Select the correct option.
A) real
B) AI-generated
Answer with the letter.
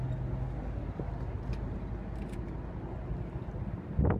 A